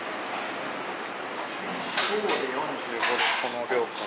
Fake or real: real